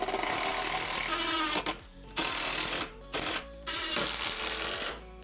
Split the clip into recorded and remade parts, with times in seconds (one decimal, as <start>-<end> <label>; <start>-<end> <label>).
0.0-5.2 recorded